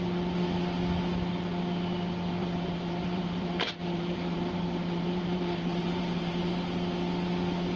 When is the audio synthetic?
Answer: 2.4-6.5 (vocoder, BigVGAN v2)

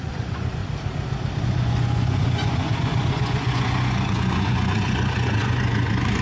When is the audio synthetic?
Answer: 0.0-0.6 (vocoder, Vocos); 1.4-6.2

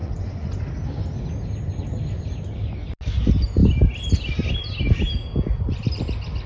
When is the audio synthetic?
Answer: 0.0-0.6 (vocoder, Vocos)

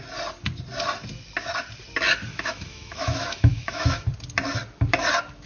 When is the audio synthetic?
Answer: 2.3-4.1 (autoencoder, DAC-VAE)

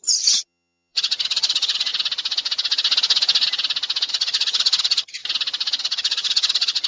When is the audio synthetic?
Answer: 0.0-1.9 (vocoder, HiFi-GAN); 4.1-5.2; 5.8-6.9